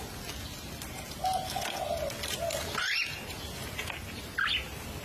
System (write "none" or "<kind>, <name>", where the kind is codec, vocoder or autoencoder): none